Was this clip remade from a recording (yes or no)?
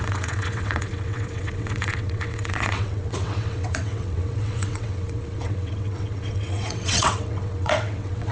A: yes